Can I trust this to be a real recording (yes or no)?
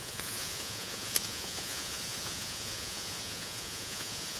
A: no